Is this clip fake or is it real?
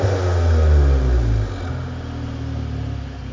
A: real